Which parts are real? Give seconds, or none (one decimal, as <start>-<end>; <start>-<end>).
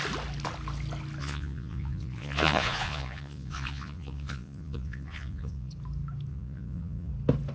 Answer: 0.0-1.2; 5.7-6.3; 7.1-7.5